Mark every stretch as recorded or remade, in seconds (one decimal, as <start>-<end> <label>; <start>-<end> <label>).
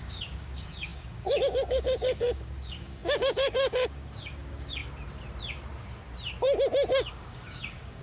0.0-4.8 remade; 4.8-7.1 recorded; 7.1-8.0 remade